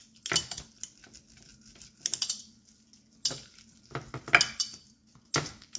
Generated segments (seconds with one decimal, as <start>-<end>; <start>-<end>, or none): none